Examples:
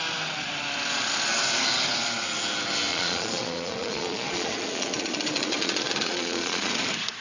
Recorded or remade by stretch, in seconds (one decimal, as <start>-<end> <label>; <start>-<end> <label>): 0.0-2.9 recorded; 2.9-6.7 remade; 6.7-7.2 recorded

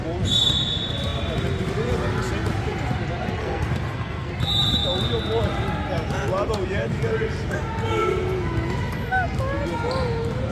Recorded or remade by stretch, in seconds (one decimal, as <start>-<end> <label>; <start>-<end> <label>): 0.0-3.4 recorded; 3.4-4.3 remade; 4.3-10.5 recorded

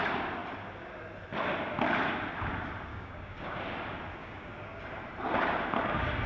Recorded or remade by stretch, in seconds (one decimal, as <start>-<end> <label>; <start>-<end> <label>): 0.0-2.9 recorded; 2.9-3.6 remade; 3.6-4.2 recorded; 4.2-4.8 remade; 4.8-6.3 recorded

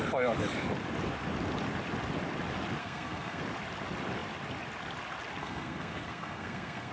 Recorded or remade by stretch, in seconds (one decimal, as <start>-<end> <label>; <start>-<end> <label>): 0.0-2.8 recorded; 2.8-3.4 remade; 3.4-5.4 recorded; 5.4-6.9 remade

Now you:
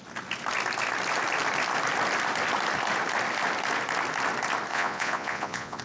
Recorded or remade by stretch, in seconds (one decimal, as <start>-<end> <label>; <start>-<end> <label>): 0.0-4.7 recorded; 4.7-5.8 remade

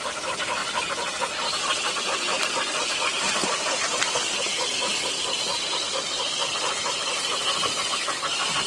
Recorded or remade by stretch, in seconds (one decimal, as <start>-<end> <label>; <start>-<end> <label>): 0.0-0.6 remade; 0.6-1.9 recorded; 1.9-8.7 remade

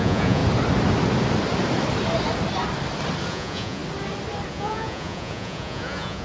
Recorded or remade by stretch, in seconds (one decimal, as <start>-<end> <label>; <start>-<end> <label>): 0.0-0.4 remade; 0.4-3.3 recorded; 3.3-3.8 remade; 3.8-4.5 recorded; 4.5-6.2 remade

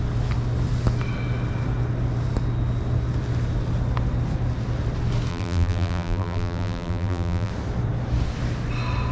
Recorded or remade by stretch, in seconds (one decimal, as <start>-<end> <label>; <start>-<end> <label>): 0.0-5.3 recorded; 5.3-7.5 remade; 7.5-9.1 recorded